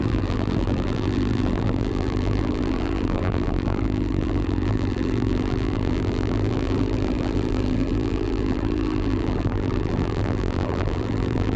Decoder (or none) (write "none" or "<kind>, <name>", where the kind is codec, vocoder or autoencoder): vocoder, BigVGAN v2